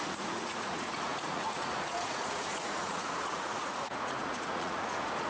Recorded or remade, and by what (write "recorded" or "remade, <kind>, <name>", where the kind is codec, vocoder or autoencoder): remade, vocoder, Vocos